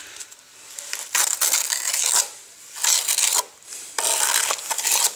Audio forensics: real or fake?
real